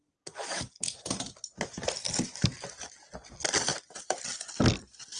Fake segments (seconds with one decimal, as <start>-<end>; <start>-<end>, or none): none